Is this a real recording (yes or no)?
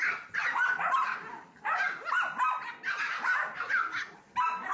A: yes